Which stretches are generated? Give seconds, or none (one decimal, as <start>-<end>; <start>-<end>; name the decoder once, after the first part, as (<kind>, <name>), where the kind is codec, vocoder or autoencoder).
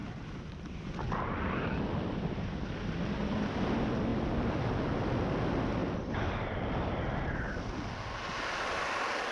none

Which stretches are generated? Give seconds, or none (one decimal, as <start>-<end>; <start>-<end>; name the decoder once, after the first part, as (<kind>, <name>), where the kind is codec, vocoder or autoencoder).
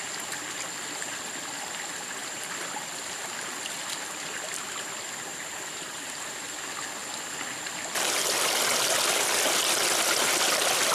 5.3-6.6 (vocoder, BigVGAN v2)